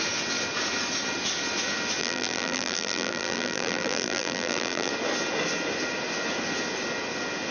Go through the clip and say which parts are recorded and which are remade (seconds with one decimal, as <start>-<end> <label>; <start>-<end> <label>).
0.0-2.0 recorded; 2.0-4.9 remade; 4.9-7.5 recorded